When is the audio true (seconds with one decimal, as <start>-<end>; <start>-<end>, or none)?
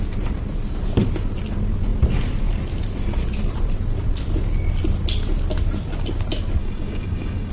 0.0-6.6